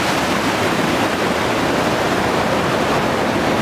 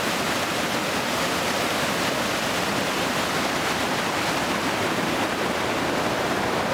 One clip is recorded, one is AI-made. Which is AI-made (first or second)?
first